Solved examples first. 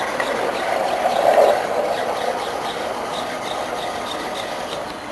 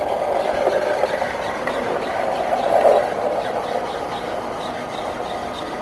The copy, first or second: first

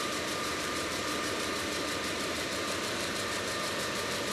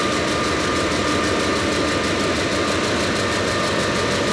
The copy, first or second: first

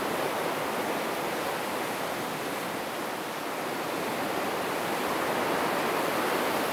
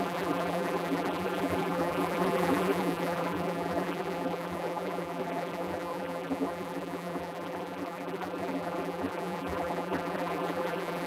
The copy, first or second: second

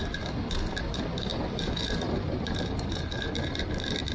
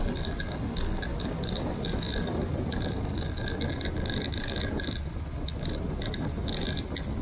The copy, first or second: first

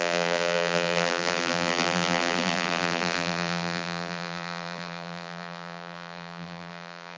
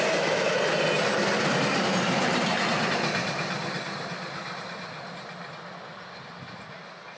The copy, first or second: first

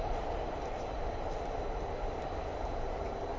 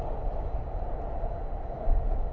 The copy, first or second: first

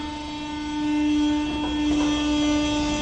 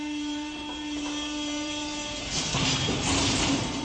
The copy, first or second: second